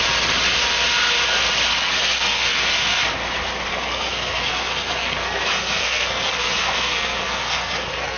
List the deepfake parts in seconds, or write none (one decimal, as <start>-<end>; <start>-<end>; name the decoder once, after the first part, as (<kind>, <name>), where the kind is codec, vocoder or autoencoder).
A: 1.7-3.0 (codec, SNAC); 3.7-8.2